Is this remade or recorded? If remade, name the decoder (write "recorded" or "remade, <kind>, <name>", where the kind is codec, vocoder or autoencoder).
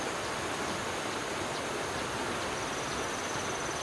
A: remade, vocoder, BigVGAN v2